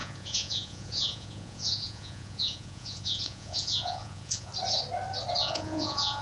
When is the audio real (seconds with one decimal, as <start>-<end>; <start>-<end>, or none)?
4.5-5.4